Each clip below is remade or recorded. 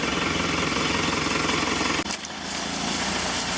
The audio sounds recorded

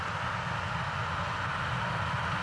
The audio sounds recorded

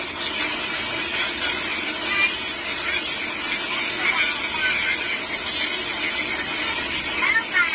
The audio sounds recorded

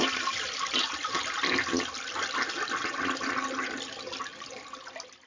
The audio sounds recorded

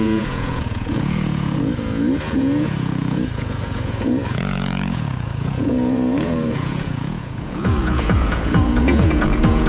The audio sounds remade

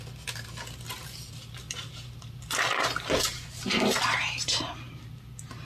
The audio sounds recorded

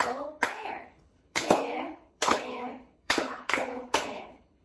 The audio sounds remade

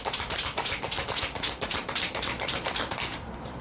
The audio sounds remade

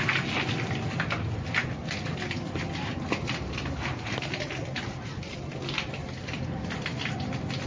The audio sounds recorded